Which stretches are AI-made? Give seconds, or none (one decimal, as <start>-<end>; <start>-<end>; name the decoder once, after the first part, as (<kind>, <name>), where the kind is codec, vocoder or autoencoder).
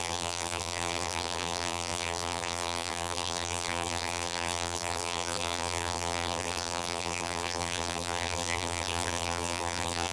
0.0-10.1 (vocoder, BigVGAN v2)